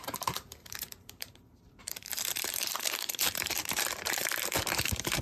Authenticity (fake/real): fake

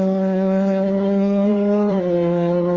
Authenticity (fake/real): fake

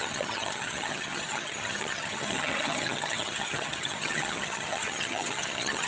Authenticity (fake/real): fake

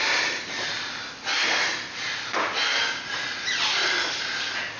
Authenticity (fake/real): real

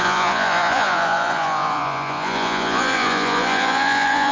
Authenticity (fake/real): fake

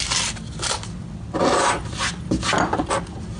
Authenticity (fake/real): real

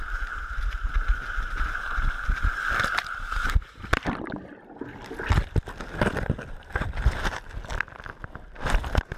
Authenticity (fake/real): real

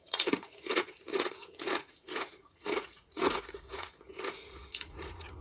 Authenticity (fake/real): fake